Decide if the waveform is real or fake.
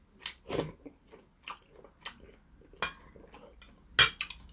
real